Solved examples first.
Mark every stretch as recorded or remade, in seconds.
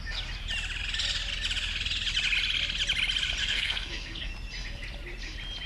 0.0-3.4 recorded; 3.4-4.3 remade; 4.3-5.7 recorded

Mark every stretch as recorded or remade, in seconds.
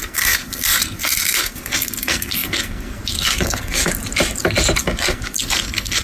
0.0-3.9 remade; 3.9-4.8 recorded; 4.8-6.0 remade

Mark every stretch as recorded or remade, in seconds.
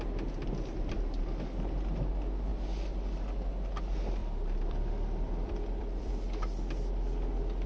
0.0-4.2 recorded; 4.2-6.1 remade; 6.1-7.7 recorded